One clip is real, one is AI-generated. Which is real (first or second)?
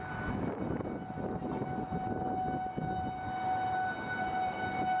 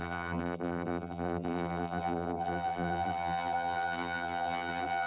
first